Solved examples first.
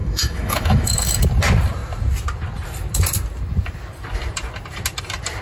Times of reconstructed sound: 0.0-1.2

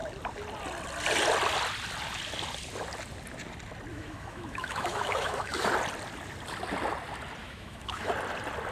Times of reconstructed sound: 3.9-5.7; 7.4-8.1

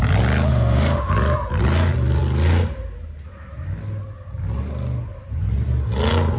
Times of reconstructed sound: 0.5-1.1

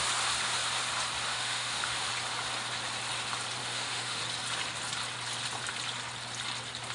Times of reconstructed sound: 1.3-2.1; 3.6-4.2